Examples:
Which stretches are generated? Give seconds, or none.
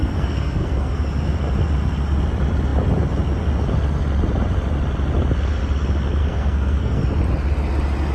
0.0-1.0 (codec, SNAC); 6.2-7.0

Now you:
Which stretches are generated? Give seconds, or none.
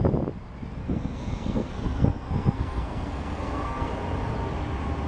0.8-3.9 (codec, SNAC)